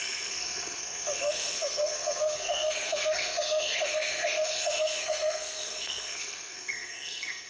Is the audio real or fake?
fake